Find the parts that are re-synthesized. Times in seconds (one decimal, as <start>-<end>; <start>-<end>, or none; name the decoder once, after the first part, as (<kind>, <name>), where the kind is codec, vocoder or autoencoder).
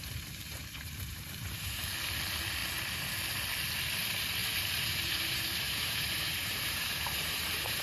0.0-1.8 (vocoder, BigVGAN v2); 4.4-7.8